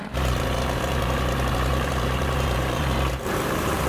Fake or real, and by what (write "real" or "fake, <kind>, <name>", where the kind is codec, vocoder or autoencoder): fake, vocoder, BigVGAN v2